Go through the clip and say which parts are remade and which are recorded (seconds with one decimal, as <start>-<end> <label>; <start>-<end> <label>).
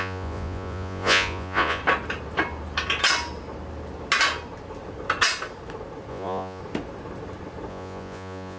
0.0-1.8 remade; 1.8-6.1 recorded; 6.1-6.6 remade; 6.6-7.7 recorded; 7.7-8.6 remade